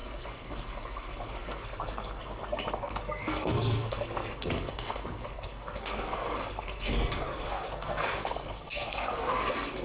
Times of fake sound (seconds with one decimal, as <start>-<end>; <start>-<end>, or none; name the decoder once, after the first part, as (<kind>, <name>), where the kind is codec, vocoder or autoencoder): 0.0-9.8 (codec, SNAC)